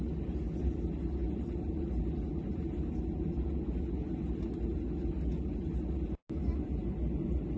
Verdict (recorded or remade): recorded